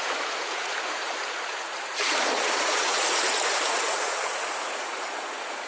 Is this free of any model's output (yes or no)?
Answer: no